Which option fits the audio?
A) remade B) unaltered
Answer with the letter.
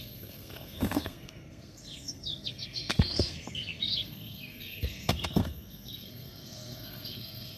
A